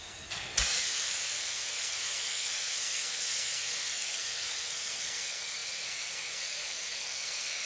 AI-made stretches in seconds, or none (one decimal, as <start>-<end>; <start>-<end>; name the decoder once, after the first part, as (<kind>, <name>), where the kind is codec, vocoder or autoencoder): 0.0-7.7 (codec, SNAC)